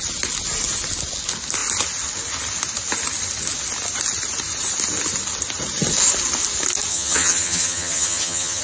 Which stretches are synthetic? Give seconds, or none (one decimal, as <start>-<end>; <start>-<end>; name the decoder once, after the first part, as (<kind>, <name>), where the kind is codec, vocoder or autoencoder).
6.9-8.6 (vocoder, HiFi-GAN)